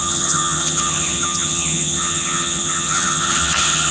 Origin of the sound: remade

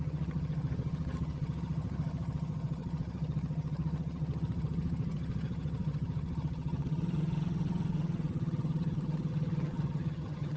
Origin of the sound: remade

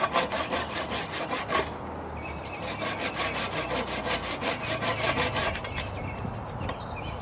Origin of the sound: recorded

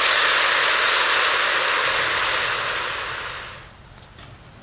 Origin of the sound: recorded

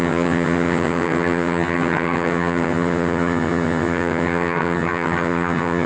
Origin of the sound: remade